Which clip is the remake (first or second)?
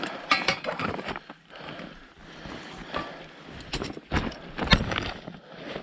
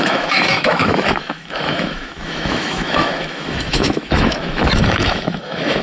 second